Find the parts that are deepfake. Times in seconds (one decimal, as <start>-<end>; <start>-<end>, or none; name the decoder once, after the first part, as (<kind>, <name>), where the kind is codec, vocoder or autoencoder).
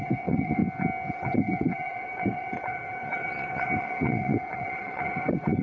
0.0-0.6 (vocoder, WaveNeXt); 1.1-5.6